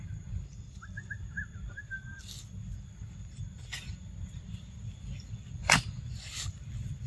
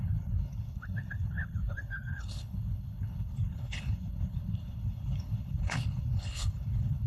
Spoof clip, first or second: second